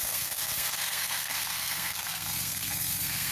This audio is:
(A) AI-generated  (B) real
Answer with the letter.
A